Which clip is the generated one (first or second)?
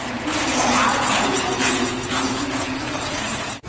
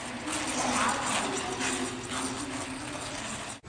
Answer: first